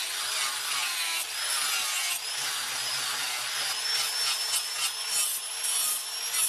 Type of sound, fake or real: real